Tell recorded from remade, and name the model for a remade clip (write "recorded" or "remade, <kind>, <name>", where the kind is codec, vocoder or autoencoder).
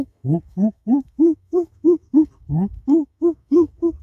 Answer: remade, codec, SNAC